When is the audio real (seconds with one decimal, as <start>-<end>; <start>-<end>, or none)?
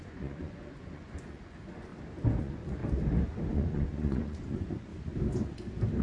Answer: 1.9-2.4; 2.8-3.5; 4.9-6.0